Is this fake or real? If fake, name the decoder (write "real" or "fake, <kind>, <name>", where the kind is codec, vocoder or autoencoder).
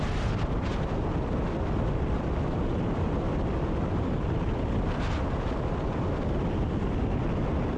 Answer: real